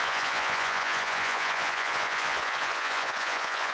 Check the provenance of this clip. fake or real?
fake